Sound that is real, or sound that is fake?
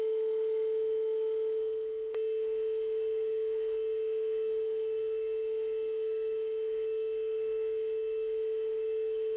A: fake